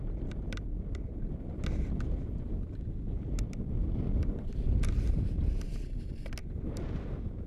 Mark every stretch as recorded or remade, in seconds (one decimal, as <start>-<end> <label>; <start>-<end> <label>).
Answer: 0.0-6.4 recorded; 6.4-7.1 remade; 7.1-7.5 recorded